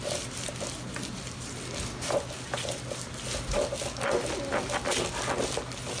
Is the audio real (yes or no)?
yes